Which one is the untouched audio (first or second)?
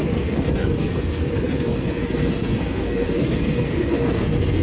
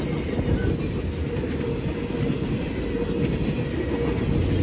second